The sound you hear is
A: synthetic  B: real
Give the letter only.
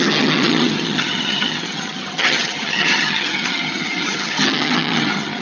A